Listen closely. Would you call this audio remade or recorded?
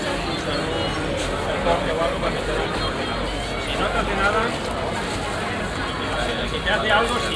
recorded